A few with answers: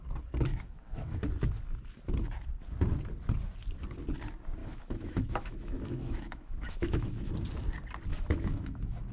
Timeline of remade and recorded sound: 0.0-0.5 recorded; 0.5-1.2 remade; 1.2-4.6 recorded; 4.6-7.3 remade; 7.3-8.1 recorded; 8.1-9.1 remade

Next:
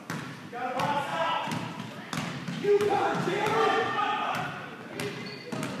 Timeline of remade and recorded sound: 0.0-1.1 recorded; 1.1-4.4 remade; 4.4-5.8 recorded

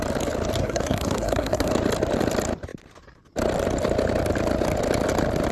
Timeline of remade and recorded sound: 0.0-0.6 recorded; 0.6-1.7 remade; 1.7-5.5 recorded

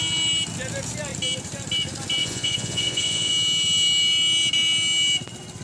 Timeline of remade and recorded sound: 0.0-2.2 recorded; 2.2-3.3 remade; 3.3-5.6 recorded

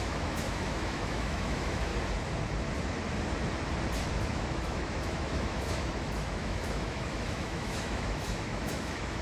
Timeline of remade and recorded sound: 0.0-1.9 remade; 1.9-4.1 recorded; 4.1-9.2 remade

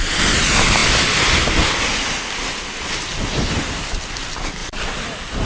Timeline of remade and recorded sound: 0.0-4.6 recorded; 4.6-5.5 remade